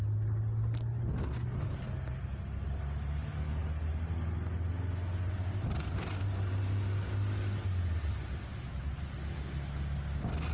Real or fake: real